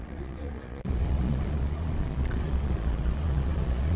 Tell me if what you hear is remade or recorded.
remade